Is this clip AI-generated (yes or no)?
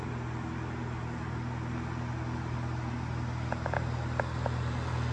no